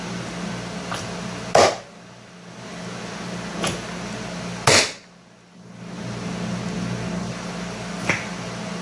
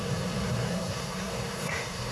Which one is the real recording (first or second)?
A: first